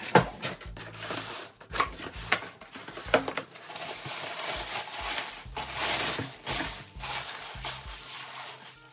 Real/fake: real